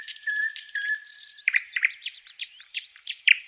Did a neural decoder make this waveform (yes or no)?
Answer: yes